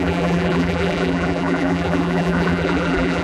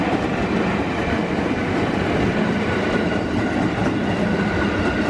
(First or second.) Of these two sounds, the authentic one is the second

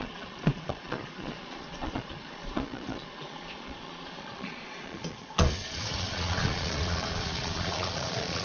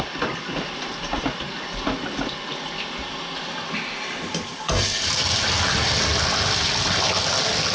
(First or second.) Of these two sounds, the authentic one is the second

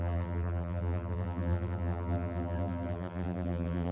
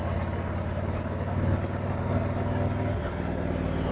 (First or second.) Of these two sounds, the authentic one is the second